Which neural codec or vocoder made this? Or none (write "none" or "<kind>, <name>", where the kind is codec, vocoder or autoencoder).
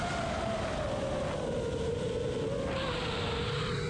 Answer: none